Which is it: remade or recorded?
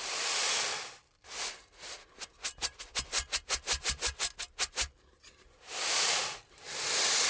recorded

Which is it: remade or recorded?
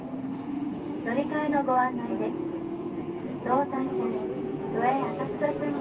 remade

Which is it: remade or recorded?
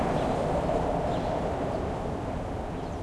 recorded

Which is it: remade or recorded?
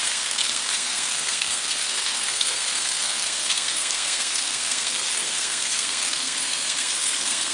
remade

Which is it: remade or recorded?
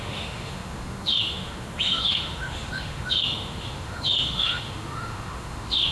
remade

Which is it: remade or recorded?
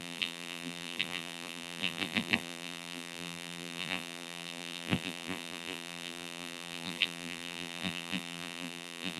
remade